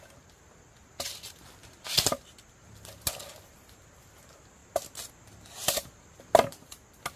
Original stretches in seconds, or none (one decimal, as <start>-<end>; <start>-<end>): 0.0-7.2